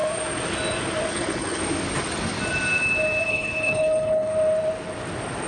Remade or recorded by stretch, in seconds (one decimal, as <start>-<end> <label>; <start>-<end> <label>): 0.0-1.1 recorded; 1.1-1.6 remade; 1.6-3.3 recorded; 3.3-4.3 remade; 4.3-5.5 recorded